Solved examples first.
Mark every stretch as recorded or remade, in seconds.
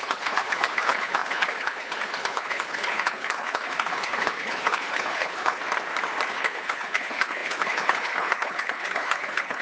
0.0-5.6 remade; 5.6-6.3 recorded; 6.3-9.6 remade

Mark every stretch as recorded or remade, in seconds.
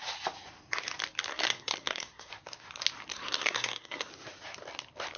0.0-1.3 recorded; 1.3-2.3 remade; 2.3-3.1 recorded; 3.1-4.1 remade; 4.1-5.2 recorded